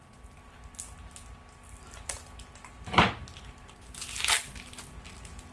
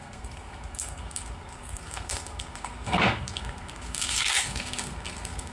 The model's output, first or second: second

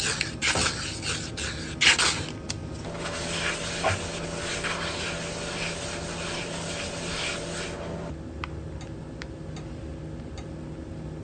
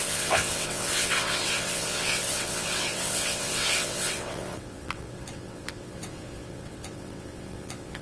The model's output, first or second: second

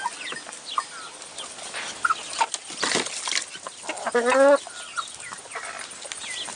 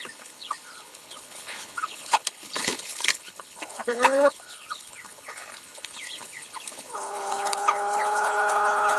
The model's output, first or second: second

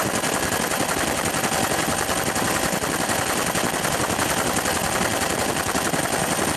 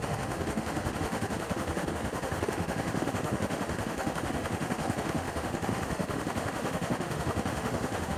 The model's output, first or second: second